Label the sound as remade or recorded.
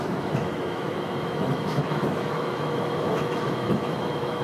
remade